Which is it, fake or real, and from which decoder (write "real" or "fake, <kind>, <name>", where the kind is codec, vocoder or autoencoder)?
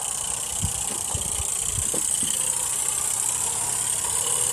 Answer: real